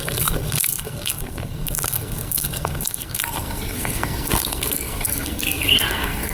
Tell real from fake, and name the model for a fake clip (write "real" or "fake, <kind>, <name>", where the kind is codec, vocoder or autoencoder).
fake, codec, SNAC